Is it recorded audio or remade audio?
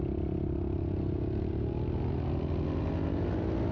recorded